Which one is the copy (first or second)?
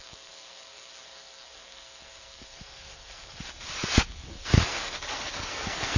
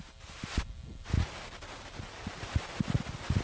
first